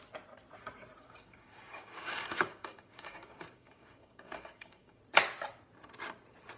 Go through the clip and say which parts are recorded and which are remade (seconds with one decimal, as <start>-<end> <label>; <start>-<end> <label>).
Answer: 0.0-1.0 recorded; 1.0-5.0 remade; 5.0-6.6 recorded

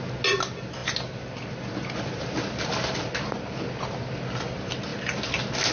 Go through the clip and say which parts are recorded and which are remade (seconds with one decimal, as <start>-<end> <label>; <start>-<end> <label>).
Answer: 0.0-5.7 recorded

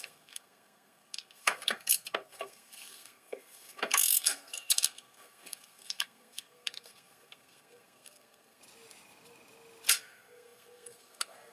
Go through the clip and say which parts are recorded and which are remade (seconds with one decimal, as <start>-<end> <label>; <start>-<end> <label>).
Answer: 0.0-8.6 remade; 8.6-9.9 recorded; 9.9-11.5 remade

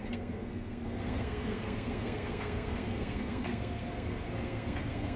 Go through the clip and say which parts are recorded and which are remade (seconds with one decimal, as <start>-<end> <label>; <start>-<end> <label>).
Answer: 0.0-5.2 remade

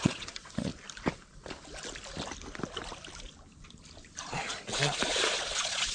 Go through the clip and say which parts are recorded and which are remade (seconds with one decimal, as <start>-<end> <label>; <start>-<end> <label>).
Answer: 0.0-0.7 remade; 0.7-4.2 recorded; 4.2-5.9 remade

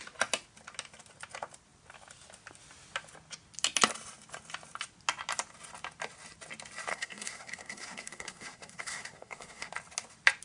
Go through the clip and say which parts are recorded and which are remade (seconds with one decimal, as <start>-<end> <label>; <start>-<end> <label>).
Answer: 0.0-6.9 recorded; 6.9-9.7 remade; 9.7-10.4 recorded

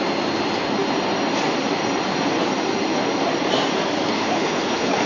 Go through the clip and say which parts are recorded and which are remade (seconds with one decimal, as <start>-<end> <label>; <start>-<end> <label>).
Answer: 0.0-4.1 recorded; 4.1-5.1 remade

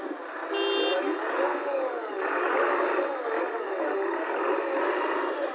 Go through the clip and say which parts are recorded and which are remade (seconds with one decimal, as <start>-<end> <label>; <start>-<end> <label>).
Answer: 0.0-1.5 recorded; 1.5-4.8 remade; 4.8-5.5 recorded